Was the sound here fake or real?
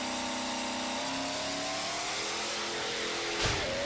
real